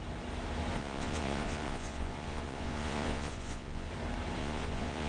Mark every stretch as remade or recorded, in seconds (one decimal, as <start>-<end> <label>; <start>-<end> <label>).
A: 0.0-0.8 recorded; 0.8-3.9 remade; 3.9-4.4 recorded; 4.4-5.1 remade